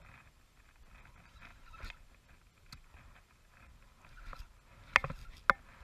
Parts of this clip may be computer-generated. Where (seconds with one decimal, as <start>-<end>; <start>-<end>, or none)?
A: none